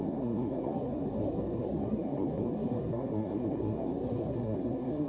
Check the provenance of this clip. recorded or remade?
remade